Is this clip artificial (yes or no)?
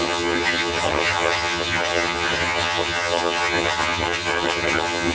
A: yes